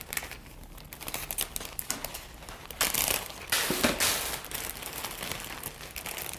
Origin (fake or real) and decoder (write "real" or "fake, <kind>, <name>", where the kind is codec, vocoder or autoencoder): real